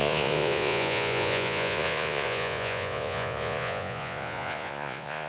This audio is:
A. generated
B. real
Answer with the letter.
A